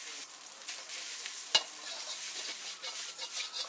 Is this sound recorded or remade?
recorded